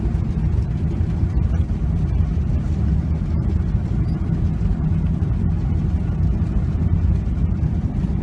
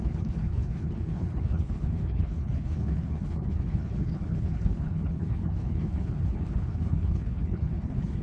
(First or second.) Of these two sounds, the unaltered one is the first